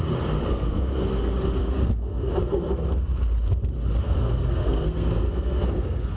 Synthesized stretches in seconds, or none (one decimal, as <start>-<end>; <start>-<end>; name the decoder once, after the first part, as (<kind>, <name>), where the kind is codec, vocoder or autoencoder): 0.5-1.1 (codec, SNAC); 1.6-2.3; 4.0-6.2